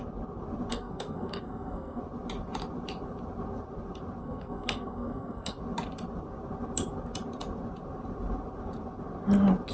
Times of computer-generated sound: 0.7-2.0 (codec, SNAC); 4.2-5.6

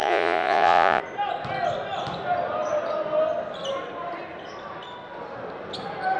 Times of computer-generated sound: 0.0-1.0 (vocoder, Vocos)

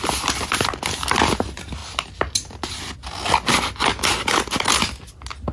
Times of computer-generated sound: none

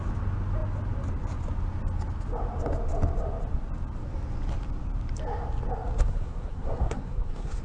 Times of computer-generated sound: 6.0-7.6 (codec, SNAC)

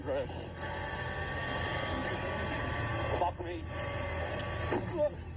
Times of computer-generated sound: none

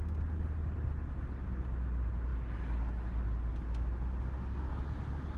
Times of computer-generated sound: none